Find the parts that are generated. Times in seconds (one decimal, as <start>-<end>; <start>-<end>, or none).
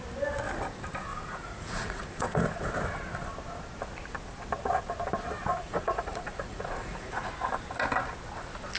1.1-2.7; 5.5-7.3